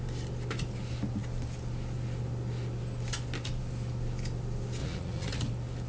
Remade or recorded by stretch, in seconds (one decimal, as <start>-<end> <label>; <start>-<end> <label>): 0.0-4.8 recorded; 4.8-5.4 remade; 5.4-5.9 recorded